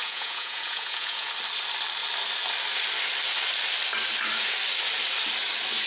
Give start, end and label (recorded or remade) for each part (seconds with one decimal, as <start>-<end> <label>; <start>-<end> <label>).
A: 0.0-1.3 remade; 1.3-5.9 recorded

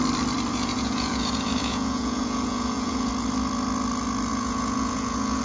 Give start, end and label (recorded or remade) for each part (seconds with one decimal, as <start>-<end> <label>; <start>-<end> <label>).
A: 0.0-0.5 recorded; 0.5-3.1 remade; 3.1-4.3 recorded; 4.3-5.4 remade

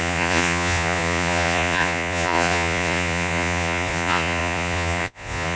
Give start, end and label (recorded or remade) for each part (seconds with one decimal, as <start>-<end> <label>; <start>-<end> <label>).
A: 0.0-5.6 remade

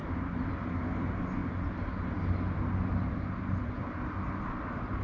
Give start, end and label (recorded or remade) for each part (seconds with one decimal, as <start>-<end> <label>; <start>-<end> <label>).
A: 0.0-5.0 recorded

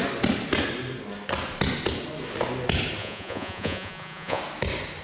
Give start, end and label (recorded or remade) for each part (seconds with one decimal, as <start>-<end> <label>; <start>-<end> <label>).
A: 0.0-3.0 recorded; 3.0-4.4 remade; 4.4-5.0 recorded

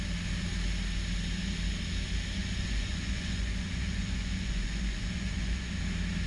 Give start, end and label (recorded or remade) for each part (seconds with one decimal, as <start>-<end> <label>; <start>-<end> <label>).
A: 0.0-2.4 recorded; 2.4-5.7 remade; 5.7-6.3 recorded

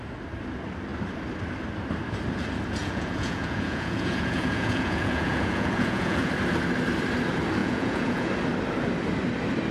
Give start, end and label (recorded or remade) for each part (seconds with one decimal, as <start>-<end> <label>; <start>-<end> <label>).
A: 0.0-2.8 recorded; 2.8-6.3 remade; 6.3-7.6 recorded; 7.6-8.3 remade; 8.3-9.7 recorded